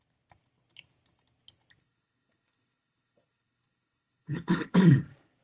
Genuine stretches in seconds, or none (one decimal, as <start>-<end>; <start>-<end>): 0.0-1.8; 5.0-5.4